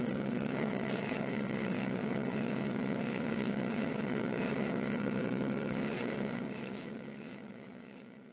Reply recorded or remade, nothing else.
remade